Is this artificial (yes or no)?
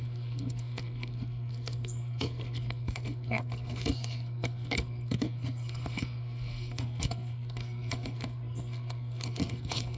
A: yes